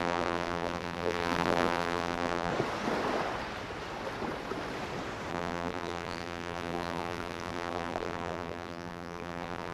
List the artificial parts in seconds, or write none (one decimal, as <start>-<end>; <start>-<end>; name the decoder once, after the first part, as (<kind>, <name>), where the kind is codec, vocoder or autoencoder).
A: 0.0-2.5 (vocoder, BigVGAN v2); 5.3-9.7